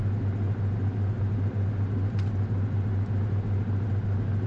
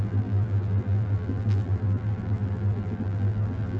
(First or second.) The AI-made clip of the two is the second